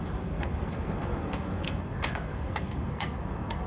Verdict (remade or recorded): remade